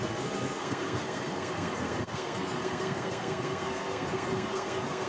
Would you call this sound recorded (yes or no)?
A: no